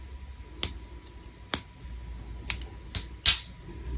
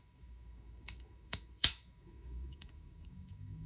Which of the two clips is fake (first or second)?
second